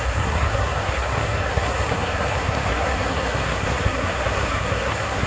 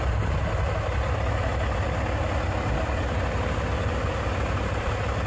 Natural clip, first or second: second